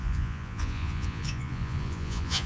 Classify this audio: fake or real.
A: fake